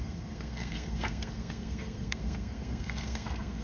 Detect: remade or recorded remade